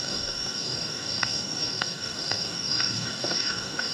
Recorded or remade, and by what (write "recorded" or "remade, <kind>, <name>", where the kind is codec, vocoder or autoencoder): remade, codec, DAC